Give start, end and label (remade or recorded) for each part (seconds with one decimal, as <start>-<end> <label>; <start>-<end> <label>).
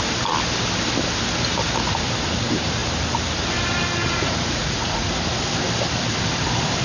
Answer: 0.0-4.0 recorded; 4.0-5.1 remade; 5.1-6.8 recorded